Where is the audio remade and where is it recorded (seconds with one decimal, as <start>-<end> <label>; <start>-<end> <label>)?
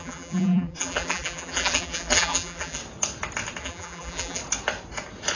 0.0-2.8 remade; 2.8-3.6 recorded; 3.6-4.4 remade; 4.4-5.4 recorded